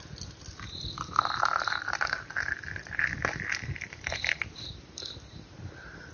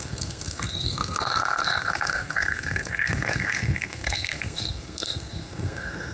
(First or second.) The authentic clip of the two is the first